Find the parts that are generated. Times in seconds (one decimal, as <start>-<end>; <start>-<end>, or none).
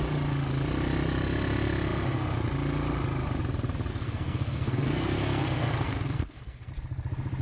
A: 3.9-6.7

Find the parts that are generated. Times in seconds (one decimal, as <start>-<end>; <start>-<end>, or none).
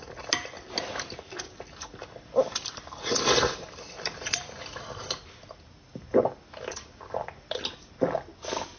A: 2.0-5.4; 6.7-7.7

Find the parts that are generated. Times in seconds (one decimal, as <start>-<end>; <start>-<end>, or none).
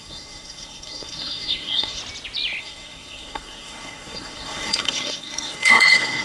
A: 0.0-2.0; 2.6-6.2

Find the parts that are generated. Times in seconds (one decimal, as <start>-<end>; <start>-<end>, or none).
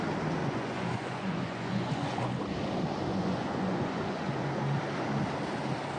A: 0.4-2.2; 3.1-4.5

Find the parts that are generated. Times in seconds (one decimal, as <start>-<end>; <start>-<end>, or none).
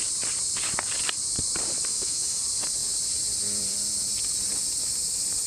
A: 1.9-2.4